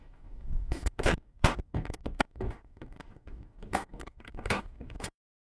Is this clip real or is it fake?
fake